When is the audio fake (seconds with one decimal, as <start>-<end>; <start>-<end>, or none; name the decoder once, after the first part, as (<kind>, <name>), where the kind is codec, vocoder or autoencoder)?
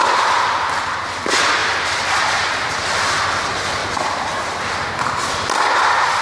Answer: 1.6-2.5 (vocoder, BigVGAN v2); 3.8-5.2